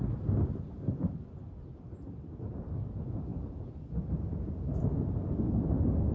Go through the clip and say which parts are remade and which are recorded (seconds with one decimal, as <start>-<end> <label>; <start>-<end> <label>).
0.0-6.1 recorded

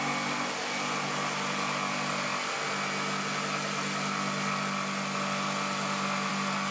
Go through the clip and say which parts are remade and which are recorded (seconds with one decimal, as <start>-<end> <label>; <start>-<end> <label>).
0.0-6.7 recorded

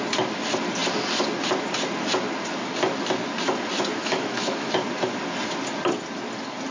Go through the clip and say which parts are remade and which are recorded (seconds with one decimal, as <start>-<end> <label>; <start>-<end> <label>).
0.0-3.9 recorded; 3.9-4.7 remade; 4.7-6.7 recorded

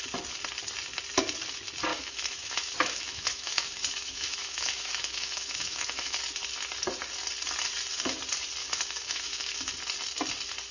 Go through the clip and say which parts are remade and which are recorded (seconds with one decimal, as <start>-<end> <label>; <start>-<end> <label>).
0.0-1.9 recorded; 1.9-6.2 remade; 6.2-8.6 recorded; 8.6-9.7 remade; 9.7-10.7 recorded

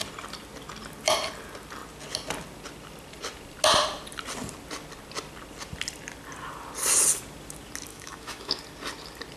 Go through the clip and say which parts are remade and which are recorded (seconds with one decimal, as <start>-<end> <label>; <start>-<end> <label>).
0.0-7.9 recorded; 7.9-8.6 remade; 8.6-9.4 recorded